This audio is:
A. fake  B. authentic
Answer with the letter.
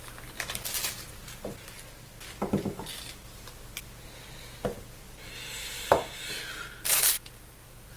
B